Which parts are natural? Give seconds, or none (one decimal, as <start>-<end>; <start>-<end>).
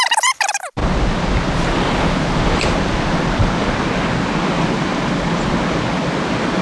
0.0-6.6